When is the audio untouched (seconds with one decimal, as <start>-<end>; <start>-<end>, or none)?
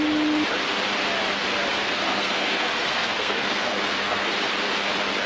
0.0-1.8; 4.3-5.3